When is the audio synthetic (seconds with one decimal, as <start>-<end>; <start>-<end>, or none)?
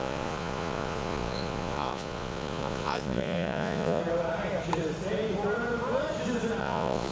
0.0-4.0; 6.6-7.1